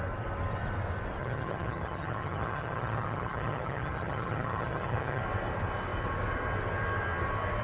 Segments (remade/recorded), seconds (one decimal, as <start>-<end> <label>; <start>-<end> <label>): 0.0-1.2 recorded; 1.2-5.2 remade; 5.2-7.6 recorded

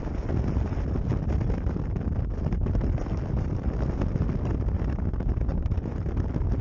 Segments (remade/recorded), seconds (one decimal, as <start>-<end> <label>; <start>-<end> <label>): 0.0-6.6 recorded

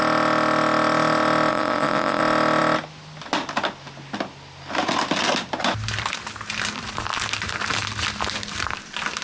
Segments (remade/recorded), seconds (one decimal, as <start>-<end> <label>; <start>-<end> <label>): 0.0-1.5 recorded; 1.5-2.2 remade; 2.2-9.2 recorded